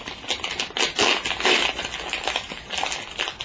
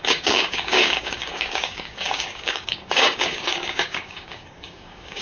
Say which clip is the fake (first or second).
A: second